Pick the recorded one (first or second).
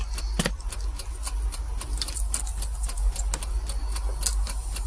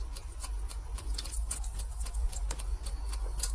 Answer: first